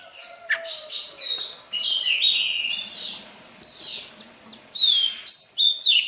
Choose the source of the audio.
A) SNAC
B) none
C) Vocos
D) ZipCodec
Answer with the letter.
B